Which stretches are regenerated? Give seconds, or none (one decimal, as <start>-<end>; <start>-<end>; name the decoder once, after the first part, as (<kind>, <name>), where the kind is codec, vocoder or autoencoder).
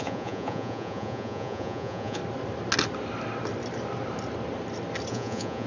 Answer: 0.0-2.2 (vocoder, Vocos); 5.1-5.7